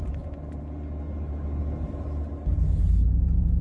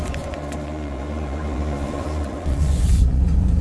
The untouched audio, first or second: first